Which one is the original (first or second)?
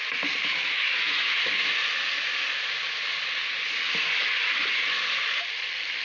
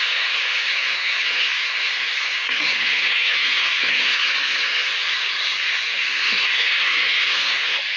first